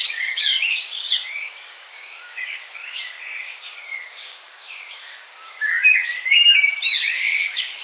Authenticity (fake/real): fake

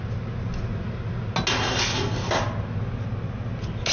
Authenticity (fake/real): real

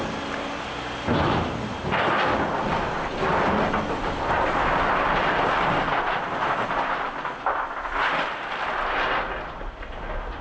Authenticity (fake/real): real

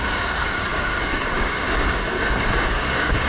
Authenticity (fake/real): fake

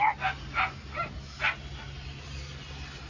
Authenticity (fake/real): real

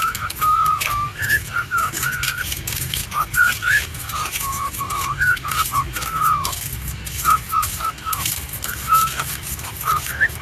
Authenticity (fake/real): fake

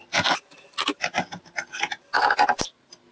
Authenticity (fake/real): real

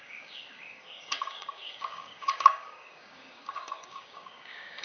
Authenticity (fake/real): fake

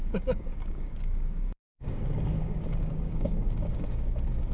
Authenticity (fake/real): fake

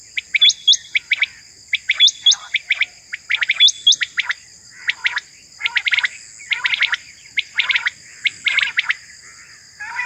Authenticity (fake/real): real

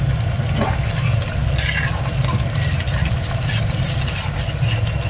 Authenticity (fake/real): real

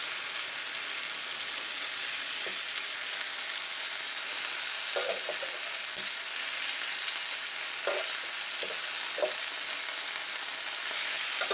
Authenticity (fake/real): real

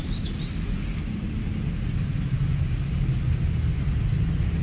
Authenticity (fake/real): real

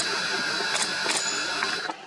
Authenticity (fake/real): real